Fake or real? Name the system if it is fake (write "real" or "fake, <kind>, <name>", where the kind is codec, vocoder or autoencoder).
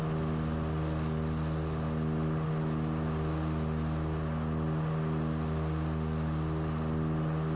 real